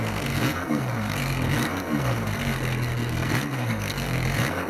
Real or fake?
fake